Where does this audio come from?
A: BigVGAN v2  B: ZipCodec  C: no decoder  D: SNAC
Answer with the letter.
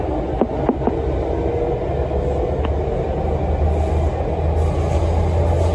C